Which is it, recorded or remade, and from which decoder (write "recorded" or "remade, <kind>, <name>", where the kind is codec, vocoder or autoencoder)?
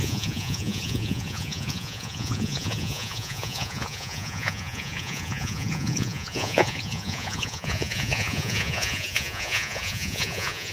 remade, vocoder, Vocos